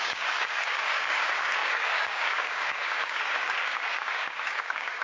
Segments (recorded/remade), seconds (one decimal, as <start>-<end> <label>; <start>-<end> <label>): 0.0-5.0 remade